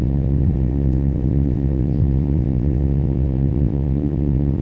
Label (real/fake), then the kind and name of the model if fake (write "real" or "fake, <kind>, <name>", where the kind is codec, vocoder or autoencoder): fake, vocoder, WaveNeXt